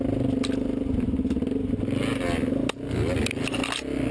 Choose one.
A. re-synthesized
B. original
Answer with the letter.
B